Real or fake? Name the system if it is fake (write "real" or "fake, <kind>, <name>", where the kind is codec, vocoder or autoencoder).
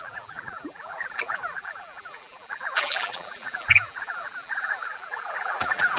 fake, vocoder, BigVGAN v2